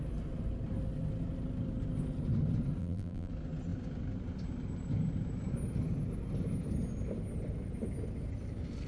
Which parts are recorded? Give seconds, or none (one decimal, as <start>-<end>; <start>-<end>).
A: 0.0-2.8; 3.3-8.9